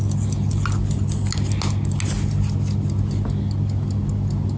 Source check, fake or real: real